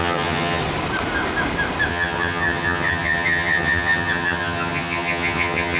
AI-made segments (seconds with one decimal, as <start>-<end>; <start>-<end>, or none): 0.0-0.6; 1.9-5.8